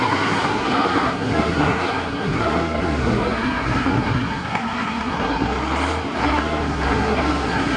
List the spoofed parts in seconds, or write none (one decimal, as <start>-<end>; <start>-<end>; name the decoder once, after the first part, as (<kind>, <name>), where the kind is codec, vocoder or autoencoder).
0.0-5.6 (codec, SNAC); 6.2-7.8